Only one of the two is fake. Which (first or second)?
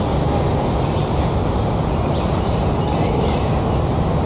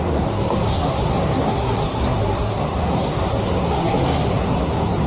second